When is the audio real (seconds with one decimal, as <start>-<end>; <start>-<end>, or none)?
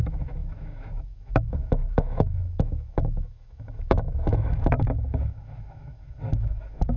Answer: none